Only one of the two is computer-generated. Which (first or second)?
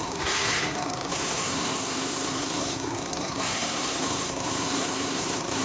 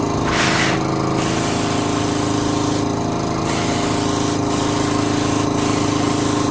first